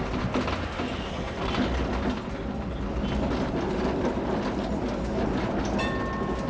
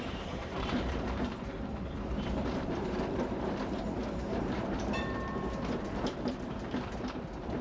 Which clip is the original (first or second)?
first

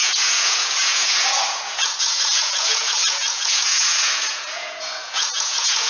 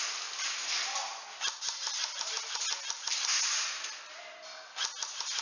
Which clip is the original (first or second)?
second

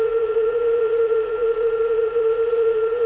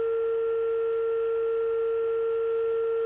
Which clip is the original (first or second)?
second